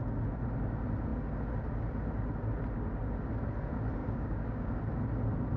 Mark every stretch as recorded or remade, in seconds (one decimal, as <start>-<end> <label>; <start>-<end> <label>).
0.0-4.0 recorded; 4.0-4.7 remade; 4.7-5.6 recorded